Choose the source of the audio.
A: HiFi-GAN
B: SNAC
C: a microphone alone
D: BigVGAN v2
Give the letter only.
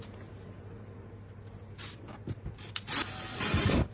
C